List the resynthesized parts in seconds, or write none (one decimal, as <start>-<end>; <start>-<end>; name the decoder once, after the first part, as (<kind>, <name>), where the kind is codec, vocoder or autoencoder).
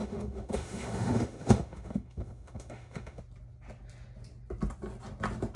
0.0-3.2 (autoencoder, DAC-VAE)